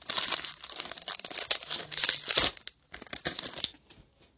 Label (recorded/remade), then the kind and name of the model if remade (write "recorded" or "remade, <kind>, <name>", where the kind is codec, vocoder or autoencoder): recorded